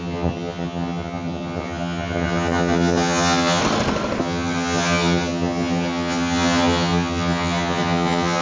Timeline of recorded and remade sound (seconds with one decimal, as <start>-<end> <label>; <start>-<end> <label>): 0.0-3.6 remade; 3.6-4.2 recorded; 4.2-8.4 remade